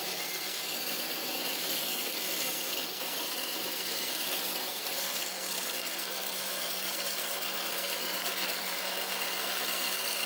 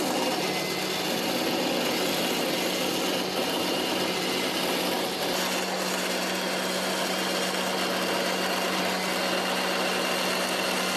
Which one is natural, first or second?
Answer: second